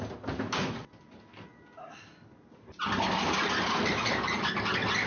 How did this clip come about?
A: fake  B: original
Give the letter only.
B